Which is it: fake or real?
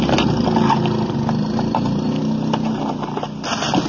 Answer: real